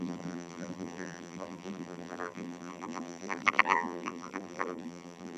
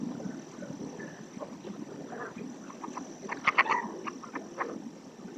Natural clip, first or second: second